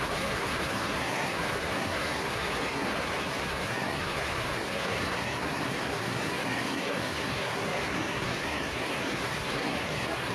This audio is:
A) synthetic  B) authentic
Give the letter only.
A